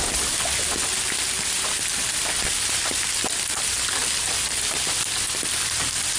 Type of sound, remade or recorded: recorded